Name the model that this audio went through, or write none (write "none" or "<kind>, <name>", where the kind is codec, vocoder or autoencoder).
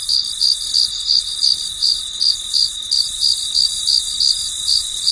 none